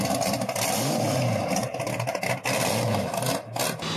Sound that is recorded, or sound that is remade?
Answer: recorded